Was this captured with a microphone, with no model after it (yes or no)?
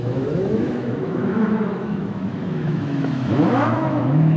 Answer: no